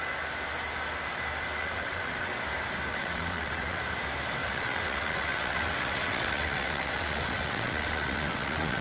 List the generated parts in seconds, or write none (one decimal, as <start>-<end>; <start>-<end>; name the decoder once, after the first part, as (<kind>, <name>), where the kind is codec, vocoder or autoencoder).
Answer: 1.6-2.3 (vocoder, WaveNeXt); 2.9-3.8; 4.4-8.8

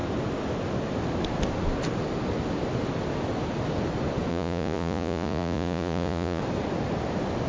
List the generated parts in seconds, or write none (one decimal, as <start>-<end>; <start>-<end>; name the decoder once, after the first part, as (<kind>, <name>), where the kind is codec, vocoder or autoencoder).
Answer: 4.3-6.4 (vocoder, Vocos)

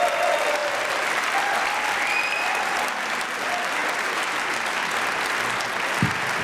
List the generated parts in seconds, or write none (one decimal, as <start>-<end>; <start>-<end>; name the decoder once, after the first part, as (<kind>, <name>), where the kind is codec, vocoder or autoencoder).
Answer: none

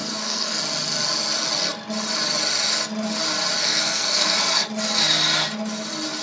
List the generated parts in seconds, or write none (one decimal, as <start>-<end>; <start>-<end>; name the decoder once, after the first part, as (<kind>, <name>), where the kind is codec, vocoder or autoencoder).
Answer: 0.0-0.6 (codec, SNAC); 3.6-4.7

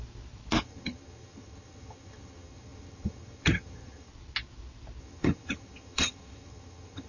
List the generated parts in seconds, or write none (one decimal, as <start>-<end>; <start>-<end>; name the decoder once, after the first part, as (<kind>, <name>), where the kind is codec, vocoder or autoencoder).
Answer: 0.6-4.1 (vocoder, HiFi-GAN); 5.0-7.1

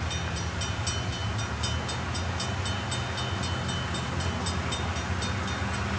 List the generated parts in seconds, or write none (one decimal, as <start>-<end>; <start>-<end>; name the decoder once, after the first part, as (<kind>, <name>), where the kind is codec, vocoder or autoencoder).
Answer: none

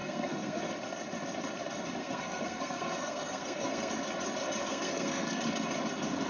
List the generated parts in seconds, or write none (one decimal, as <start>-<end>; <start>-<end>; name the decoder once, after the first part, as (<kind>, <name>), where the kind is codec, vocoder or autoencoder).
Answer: 0.0-0.7 (codec, SNAC); 2.0-3.9; 4.7-5.4

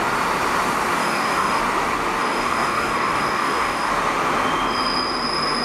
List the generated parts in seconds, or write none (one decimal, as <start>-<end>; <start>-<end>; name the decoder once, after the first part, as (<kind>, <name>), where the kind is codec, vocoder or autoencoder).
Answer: 1.0-1.6 (codec, DAC); 2.2-3.9